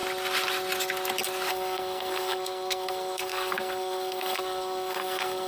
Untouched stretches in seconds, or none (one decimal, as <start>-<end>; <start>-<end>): 0.0-1.5